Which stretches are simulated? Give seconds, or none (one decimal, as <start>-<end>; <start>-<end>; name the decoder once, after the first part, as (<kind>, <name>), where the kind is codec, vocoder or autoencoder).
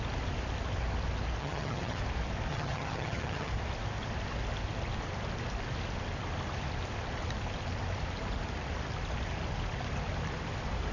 1.4-2.0 (vocoder, HiFi-GAN); 2.5-3.5